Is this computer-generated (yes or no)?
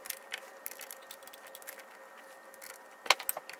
no